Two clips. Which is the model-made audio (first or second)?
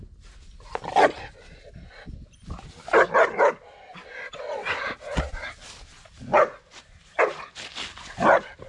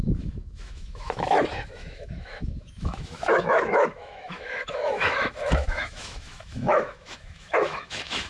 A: second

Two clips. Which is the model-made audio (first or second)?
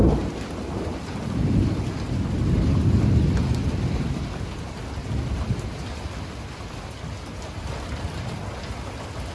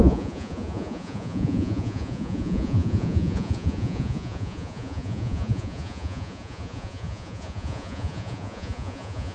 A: second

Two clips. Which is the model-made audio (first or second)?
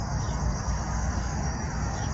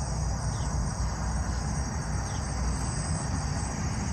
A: first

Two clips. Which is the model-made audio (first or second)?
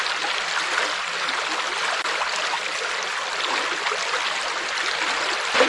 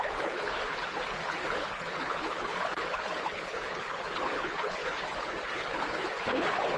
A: second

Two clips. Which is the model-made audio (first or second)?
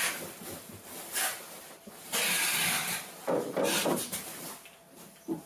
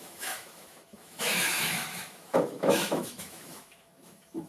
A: second